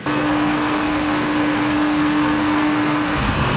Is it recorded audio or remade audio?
remade